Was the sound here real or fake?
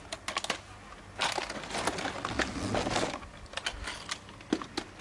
real